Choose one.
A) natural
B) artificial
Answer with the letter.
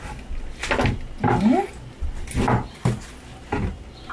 A